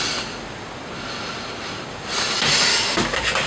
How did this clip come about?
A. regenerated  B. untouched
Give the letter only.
B